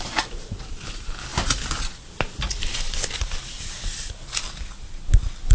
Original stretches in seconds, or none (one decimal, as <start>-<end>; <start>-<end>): 0.0-5.5